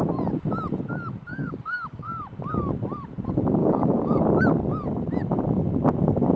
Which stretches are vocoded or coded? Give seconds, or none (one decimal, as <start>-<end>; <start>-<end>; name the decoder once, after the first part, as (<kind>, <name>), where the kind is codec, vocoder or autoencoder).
1.3-2.2 (codec, DAC); 3.6-4.2